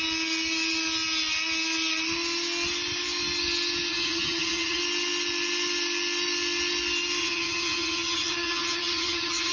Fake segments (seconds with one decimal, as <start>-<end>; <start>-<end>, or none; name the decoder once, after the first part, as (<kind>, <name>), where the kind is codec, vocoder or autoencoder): 3.9-4.8 (vocoder, HiFi-GAN); 7.2-9.5